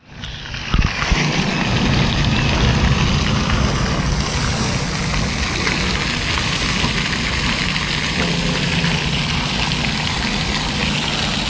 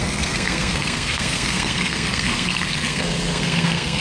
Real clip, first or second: first